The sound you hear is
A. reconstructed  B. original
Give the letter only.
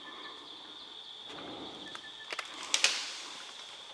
B